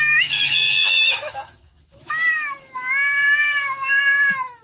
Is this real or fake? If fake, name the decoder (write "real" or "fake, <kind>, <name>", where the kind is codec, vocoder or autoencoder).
fake, autoencoder, DAC-VAE